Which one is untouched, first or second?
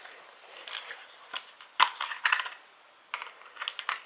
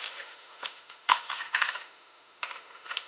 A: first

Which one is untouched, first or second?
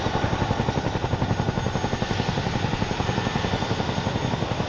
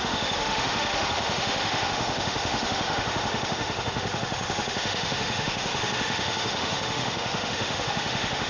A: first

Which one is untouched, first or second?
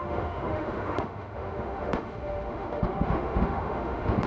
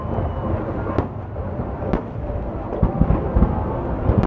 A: second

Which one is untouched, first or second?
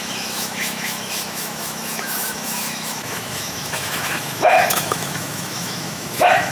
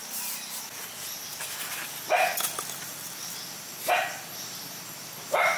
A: second